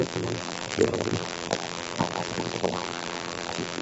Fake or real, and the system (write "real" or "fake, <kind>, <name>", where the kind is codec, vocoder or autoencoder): fake, vocoder, BigVGAN v2